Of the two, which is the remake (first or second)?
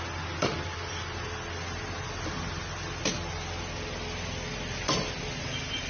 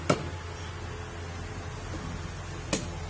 first